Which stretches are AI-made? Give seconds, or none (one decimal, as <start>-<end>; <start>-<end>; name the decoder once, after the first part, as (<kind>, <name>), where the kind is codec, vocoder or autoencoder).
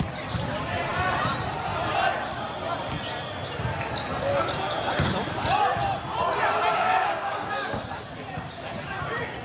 6.7-7.8 (codec, DAC)